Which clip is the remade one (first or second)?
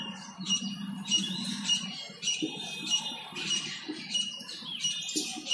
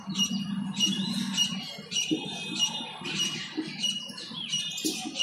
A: first